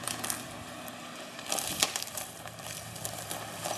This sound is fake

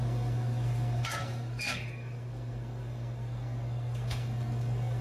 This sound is fake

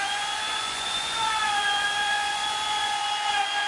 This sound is fake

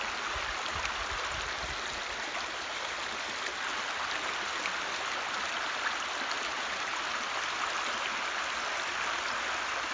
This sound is real